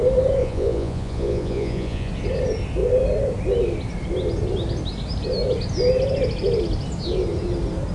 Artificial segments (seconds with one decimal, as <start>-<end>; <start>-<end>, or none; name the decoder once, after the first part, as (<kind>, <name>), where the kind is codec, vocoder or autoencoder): 0.4-2.1 (vocoder, Vocos)